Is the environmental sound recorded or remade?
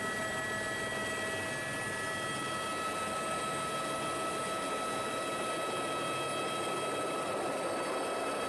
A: recorded